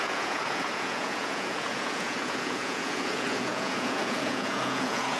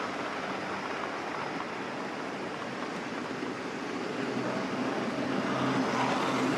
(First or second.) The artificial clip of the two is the first